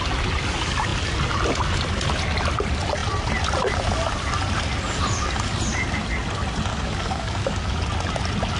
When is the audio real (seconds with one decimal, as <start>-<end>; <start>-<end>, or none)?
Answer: 0.0-6.7; 7.8-8.6